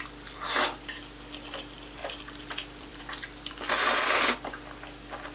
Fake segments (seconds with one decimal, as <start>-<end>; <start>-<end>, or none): 2.0-3.0